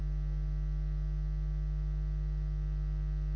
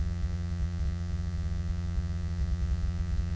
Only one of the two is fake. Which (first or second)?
second